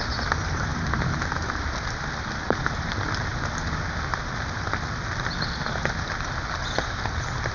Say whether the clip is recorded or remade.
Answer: recorded